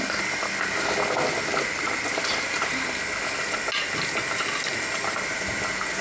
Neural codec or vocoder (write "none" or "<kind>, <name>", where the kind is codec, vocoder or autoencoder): none